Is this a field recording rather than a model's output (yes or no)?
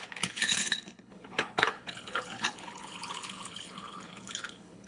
no